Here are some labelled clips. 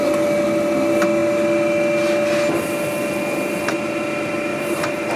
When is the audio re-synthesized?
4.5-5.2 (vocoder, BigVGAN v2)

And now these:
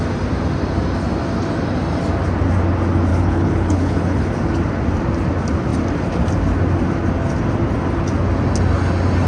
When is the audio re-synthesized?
3.1-4.3 (codec, HILCodec)

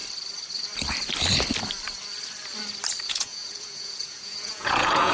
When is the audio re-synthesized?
3.1-5.1 (vocoder, Vocos)

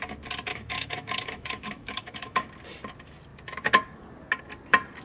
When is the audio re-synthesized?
0.5-2.5 (autoencoder, DAC-VAE)